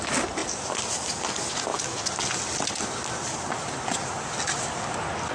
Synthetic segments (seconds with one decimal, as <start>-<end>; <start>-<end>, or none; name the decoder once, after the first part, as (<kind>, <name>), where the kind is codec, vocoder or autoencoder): 0.0-0.4 (vocoder, BigVGAN v2); 1.0-1.7; 4.6-5.3